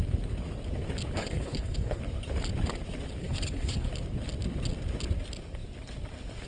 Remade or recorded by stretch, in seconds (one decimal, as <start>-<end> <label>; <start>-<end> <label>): 0.0-1.2 recorded; 1.2-2.0 remade; 2.0-3.2 recorded; 3.2-3.9 remade; 3.9-6.5 recorded